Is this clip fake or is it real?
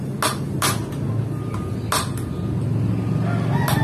real